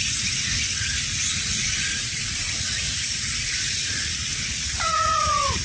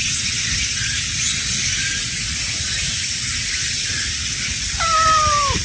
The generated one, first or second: first